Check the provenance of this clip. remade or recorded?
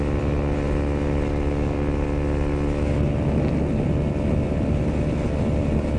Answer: recorded